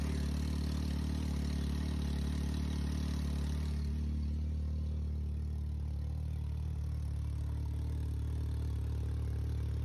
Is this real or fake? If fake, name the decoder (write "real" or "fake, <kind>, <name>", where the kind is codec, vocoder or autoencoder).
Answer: real